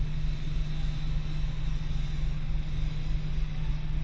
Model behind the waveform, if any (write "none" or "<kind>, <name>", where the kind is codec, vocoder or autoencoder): none